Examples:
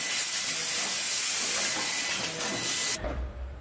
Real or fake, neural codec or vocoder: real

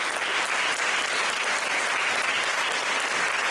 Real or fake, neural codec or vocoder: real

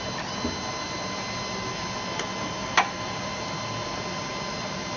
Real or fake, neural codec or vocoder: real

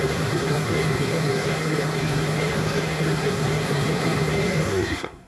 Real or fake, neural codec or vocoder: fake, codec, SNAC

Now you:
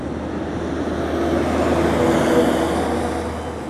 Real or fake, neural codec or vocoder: real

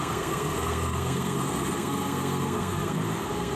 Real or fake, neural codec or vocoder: fake, codec, SNAC